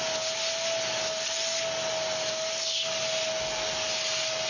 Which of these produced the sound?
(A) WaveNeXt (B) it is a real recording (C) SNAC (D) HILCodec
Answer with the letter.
B